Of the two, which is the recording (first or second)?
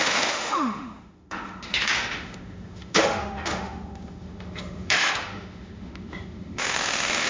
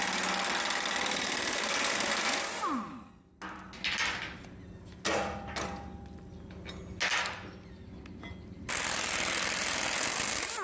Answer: second